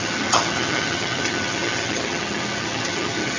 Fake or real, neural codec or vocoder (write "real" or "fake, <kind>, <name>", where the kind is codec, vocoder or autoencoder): fake, vocoder, HiFi-GAN